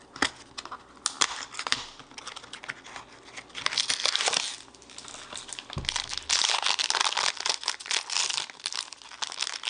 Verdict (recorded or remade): recorded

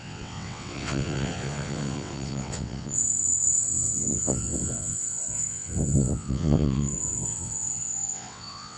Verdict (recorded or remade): remade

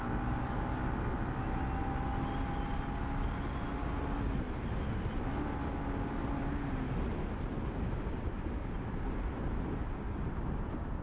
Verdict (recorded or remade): recorded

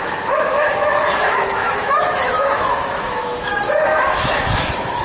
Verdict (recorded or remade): remade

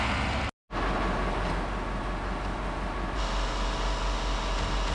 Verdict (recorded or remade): recorded